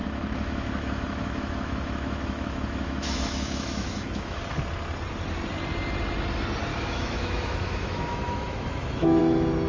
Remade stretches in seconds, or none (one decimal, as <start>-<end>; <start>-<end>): 0.0-4.4; 6.7-9.2